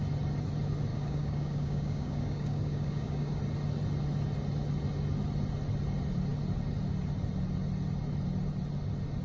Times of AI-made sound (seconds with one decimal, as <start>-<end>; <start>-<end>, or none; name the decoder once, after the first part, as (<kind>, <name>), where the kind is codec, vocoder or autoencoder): 0.9-3.4 (codec, DAC)